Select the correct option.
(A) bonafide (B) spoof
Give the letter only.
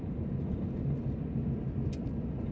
A